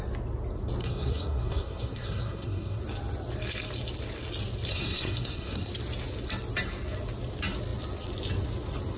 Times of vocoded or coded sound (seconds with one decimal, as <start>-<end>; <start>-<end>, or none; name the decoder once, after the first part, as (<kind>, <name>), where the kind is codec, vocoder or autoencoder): 0.8-2.8 (codec, SNAC); 4.7-5.7